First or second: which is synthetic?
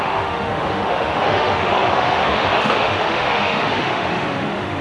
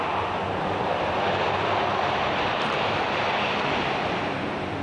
first